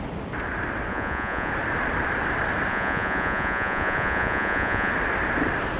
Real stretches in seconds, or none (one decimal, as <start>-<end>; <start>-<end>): 0.0-0.9; 1.5-2.7; 4.9-5.8